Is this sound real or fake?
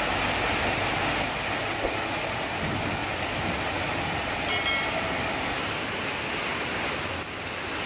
real